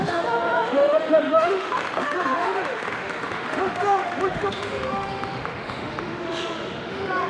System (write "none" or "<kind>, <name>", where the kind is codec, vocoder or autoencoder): autoencoder, DAC-VAE